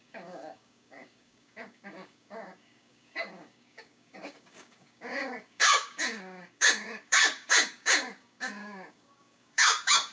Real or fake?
fake